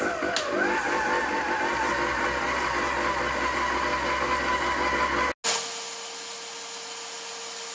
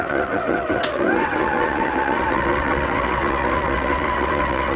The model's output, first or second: second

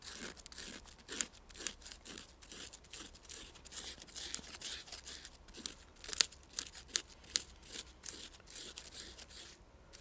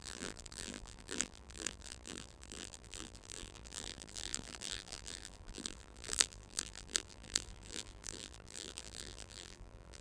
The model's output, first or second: second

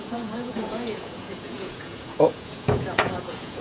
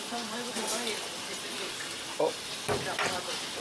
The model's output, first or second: first